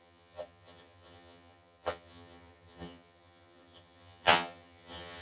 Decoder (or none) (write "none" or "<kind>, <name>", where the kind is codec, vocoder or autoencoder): vocoder, HiFi-GAN